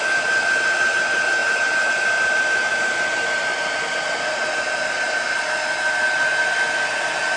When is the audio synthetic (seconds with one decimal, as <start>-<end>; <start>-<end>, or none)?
none